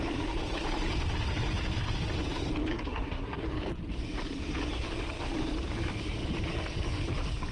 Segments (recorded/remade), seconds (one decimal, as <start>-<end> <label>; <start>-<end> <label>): 0.0-2.7 recorded; 2.7-3.5 remade; 3.5-7.5 recorded